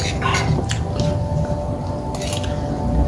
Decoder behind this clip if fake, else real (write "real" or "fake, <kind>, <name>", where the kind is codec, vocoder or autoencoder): real